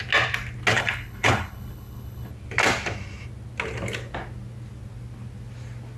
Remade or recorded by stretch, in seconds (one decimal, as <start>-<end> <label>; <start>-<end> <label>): 0.0-0.7 recorded; 0.7-2.3 remade; 2.3-6.0 recorded